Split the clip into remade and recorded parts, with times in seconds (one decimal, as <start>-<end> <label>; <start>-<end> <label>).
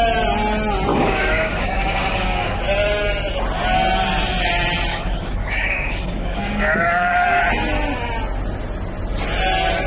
0.0-0.9 recorded; 0.9-2.6 remade; 2.6-4.9 recorded; 4.9-7.4 remade; 7.4-9.9 recorded